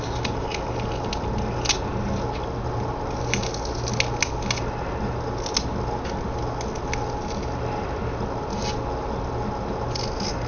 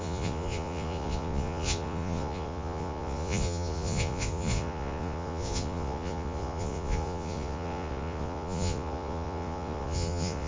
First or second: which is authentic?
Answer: first